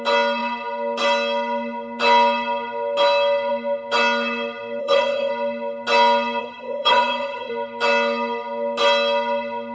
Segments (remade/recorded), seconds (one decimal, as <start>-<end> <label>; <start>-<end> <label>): 0.0-4.8 recorded; 4.8-5.3 remade; 5.3-6.4 recorded; 6.4-7.5 remade; 7.5-9.7 recorded